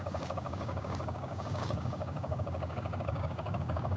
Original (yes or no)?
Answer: no